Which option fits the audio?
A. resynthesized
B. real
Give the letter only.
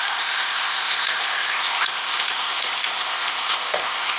A